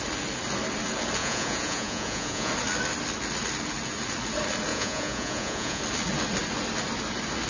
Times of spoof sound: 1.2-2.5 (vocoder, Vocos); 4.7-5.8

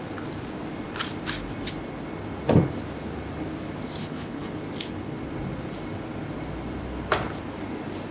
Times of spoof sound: 4.0-4.5 (codec, HILCodec)

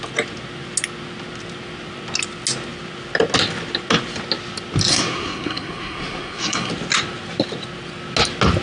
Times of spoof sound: 4.9-6.7 (codec, SNAC)